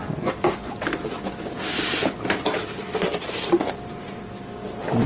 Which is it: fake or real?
real